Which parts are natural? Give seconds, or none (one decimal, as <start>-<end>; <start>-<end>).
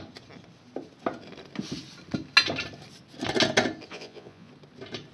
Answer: 0.0-3.9; 4.5-5.1